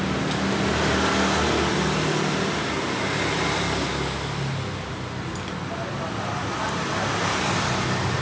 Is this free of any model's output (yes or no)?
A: yes